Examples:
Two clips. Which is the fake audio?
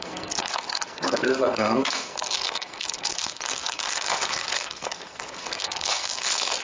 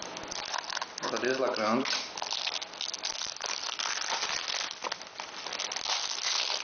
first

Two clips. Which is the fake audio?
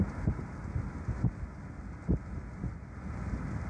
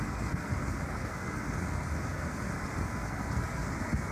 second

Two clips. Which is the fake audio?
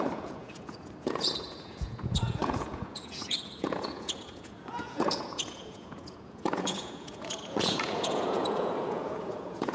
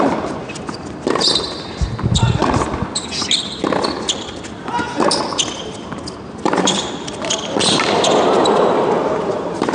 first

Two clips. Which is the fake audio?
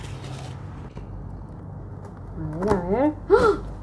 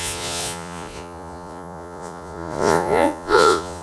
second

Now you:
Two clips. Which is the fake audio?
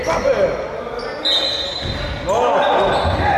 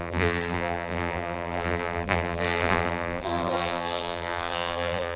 second